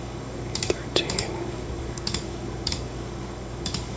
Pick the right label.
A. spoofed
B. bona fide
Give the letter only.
A